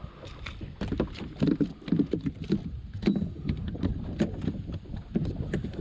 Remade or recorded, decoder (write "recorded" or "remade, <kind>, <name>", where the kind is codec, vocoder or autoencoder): recorded